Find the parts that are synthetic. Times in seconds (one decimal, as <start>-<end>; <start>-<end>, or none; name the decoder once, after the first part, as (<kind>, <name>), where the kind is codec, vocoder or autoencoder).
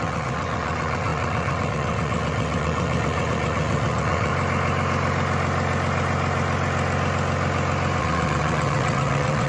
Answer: 0.0-4.3 (vocoder, WaveNeXt); 8.0-9.5